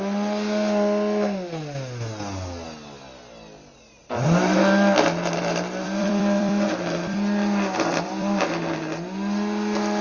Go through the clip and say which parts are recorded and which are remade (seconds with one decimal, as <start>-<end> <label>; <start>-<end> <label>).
0.0-4.0 recorded; 4.0-8.8 remade; 8.8-10.0 recorded